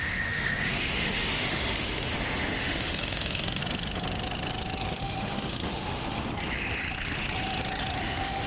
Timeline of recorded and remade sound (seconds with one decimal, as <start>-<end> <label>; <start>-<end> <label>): 0.0-3.6 remade; 3.6-5.0 recorded; 5.0-6.3 remade; 6.3-8.0 recorded; 8.0-8.5 remade